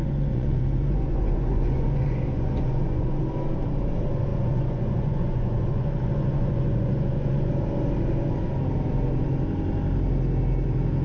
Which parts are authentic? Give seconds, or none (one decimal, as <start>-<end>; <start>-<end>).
3.2-4.3; 7.5-11.0